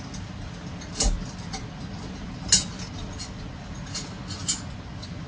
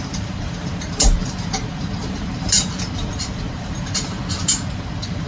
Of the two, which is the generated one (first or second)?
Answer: second